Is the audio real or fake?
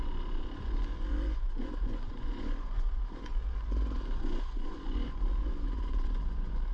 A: fake